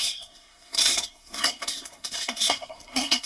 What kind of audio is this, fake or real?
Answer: fake